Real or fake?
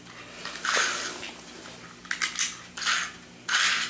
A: real